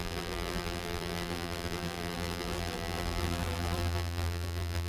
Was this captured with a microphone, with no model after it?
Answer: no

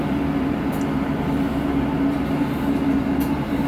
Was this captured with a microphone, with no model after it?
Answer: yes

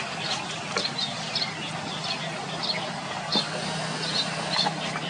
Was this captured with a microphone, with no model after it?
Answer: yes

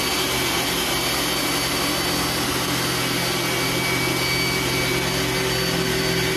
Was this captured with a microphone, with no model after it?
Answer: yes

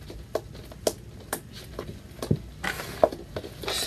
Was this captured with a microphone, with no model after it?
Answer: yes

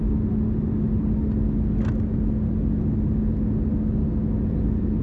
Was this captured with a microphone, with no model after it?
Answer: yes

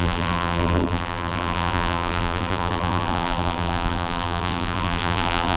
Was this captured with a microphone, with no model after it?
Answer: no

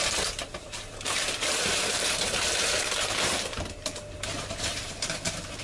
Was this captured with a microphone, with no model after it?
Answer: no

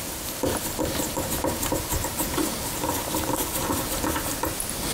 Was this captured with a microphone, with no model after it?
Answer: yes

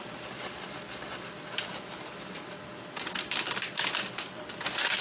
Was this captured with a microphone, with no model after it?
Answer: yes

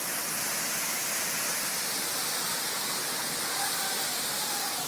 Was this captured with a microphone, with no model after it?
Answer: yes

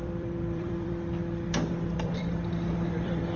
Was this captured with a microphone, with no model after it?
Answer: no